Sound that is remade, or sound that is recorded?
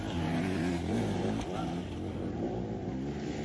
recorded